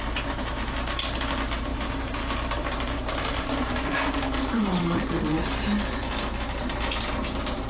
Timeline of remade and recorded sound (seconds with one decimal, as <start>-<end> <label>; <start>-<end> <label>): 0.0-7.7 remade